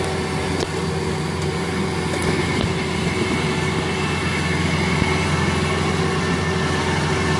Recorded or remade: recorded